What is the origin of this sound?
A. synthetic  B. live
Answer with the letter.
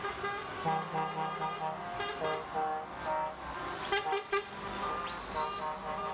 B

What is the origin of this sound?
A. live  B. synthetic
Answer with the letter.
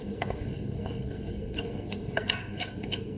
B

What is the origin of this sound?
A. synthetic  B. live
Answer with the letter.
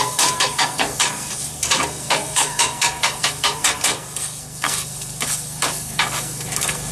A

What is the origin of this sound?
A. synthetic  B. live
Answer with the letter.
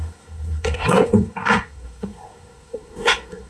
A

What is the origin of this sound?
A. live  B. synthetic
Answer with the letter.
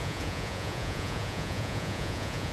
B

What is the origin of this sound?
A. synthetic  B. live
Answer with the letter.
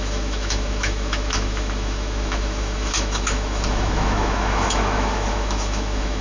A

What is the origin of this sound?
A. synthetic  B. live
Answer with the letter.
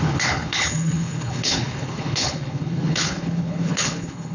A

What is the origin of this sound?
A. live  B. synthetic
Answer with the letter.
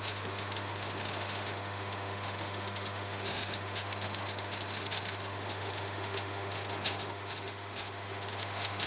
B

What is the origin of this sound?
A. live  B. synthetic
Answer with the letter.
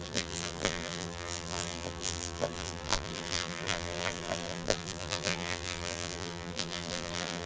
B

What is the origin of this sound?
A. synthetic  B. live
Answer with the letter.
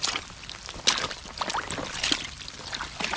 B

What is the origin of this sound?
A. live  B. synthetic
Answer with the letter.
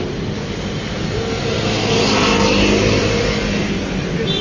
A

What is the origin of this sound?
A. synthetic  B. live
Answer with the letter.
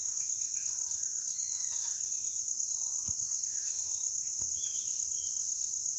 A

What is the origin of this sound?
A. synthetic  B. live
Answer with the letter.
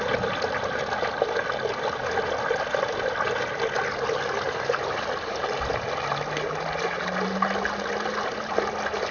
B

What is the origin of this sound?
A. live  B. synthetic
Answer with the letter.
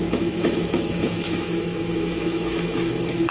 B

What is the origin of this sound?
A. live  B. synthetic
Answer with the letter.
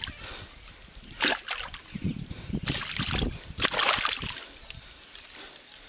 A